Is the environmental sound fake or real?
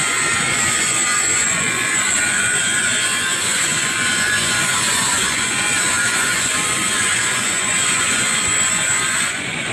fake